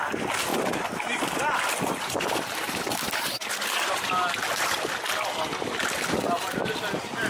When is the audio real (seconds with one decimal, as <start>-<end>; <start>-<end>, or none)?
0.0-7.3